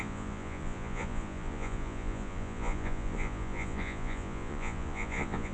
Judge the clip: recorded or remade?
remade